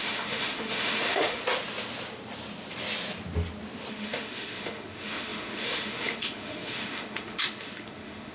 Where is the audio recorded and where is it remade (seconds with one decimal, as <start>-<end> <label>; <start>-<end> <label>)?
0.0-1.4 remade; 1.4-3.9 recorded; 3.9-8.3 remade